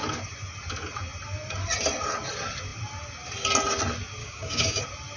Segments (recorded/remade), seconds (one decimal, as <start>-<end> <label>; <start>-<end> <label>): 0.0-4.2 recorded; 4.2-4.8 remade; 4.8-5.2 recorded